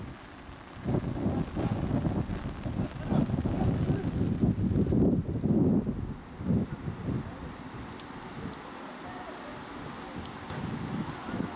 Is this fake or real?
real